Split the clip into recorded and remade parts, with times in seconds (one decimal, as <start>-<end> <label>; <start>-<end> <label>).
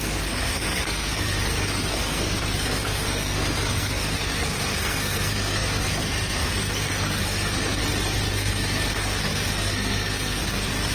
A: 0.0-7.8 remade; 7.8-8.3 recorded; 8.3-10.9 remade